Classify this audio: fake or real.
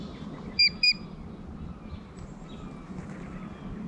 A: real